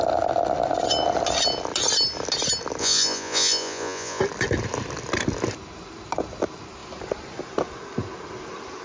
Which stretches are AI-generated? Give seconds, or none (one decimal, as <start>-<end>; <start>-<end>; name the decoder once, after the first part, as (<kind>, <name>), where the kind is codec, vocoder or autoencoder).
2.8-4.2 (vocoder, Vocos)